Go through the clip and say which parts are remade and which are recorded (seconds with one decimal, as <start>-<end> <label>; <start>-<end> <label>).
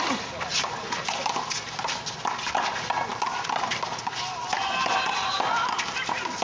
0.0-6.4 recorded